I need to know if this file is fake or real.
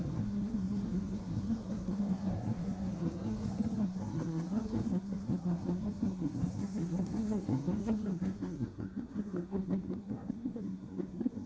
fake